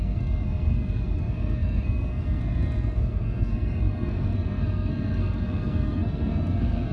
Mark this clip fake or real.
fake